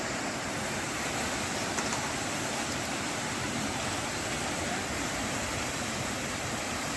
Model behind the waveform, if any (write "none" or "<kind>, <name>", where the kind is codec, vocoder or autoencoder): vocoder, BigVGAN v2